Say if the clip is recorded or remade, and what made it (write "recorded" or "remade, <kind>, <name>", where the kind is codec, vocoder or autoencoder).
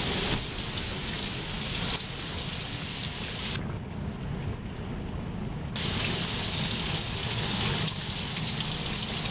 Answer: recorded